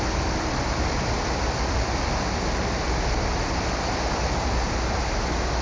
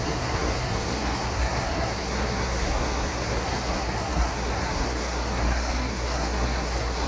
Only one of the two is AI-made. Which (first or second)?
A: second